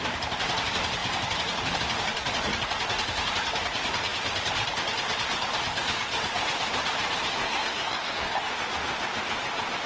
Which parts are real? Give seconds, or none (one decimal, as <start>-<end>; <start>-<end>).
0.0-7.3; 8.5-9.9